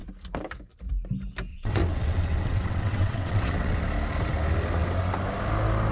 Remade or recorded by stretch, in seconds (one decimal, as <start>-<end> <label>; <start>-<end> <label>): 0.0-1.5 recorded; 1.5-3.8 remade; 3.8-5.9 recorded